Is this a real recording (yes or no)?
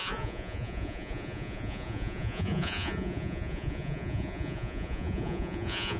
no